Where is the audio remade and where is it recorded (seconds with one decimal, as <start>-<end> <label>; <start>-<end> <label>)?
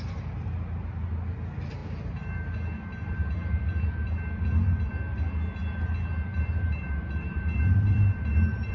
0.0-6.3 recorded; 6.3-8.7 remade